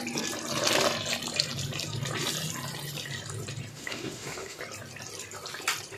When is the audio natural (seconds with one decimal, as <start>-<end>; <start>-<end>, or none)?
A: 0.0-3.7; 4.6-6.0